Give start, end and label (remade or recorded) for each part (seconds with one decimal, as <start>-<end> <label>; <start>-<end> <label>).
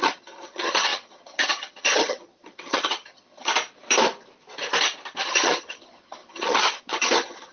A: 0.0-3.5 remade; 3.5-5.2 recorded; 5.2-7.5 remade